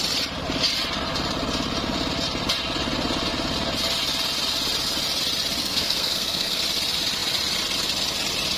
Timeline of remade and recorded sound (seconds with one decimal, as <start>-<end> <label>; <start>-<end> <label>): 0.0-5.6 recorded; 5.6-6.6 remade; 6.6-8.6 recorded